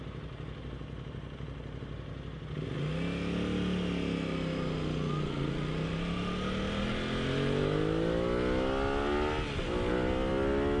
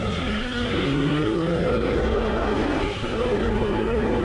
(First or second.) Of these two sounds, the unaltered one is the first